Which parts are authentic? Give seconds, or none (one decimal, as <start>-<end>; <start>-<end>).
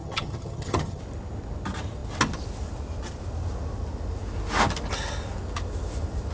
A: 1.0-6.3